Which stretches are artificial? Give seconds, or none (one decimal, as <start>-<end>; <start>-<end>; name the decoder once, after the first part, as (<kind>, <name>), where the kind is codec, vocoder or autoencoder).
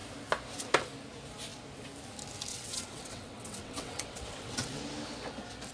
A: 2.5-4.8 (vocoder, WaveNeXt)